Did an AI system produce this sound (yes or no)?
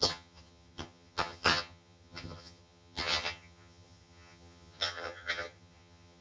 yes